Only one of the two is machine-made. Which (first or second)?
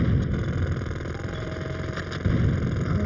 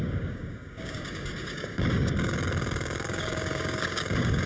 second